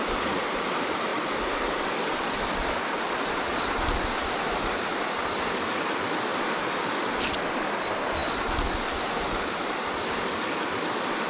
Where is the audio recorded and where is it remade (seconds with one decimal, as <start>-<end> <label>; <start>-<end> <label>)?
0.0-1.1 recorded; 1.1-5.4 remade; 5.4-11.3 recorded